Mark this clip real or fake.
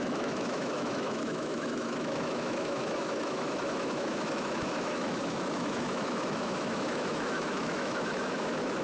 fake